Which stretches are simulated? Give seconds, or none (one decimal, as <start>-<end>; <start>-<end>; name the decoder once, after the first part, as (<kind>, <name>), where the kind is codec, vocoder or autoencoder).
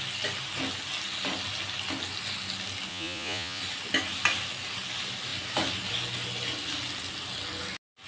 2.9-3.6 (vocoder, Vocos)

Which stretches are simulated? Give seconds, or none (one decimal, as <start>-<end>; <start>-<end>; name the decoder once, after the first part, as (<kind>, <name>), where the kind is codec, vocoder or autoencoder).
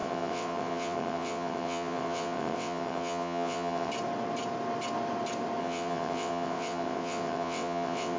0.0-3.9 (vocoder, WaveNeXt); 5.6-8.2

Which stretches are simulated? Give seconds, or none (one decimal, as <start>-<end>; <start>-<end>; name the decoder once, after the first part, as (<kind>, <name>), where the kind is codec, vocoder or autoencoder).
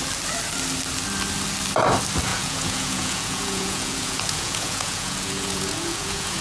2.3-6.4 (vocoder, Vocos)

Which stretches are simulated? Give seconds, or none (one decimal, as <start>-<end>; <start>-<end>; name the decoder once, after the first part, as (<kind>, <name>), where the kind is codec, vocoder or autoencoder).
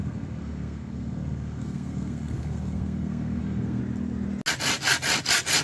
0.0-3.8 (codec, SNAC)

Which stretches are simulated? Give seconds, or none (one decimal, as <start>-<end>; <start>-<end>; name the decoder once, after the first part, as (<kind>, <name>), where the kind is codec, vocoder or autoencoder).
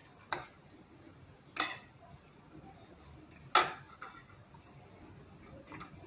none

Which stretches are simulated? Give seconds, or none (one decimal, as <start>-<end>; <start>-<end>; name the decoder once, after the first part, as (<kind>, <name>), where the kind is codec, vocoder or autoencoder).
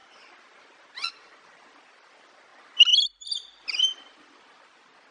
none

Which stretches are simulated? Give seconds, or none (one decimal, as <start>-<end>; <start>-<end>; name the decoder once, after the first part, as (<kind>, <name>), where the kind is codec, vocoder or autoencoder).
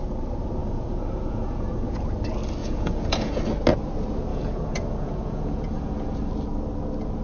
0.6-1.9 (vocoder, Vocos); 2.6-3.4; 4.3-6.3